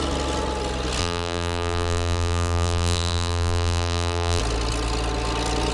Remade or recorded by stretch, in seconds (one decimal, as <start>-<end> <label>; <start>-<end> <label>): 0.0-1.0 recorded; 1.0-4.4 remade; 4.4-5.7 recorded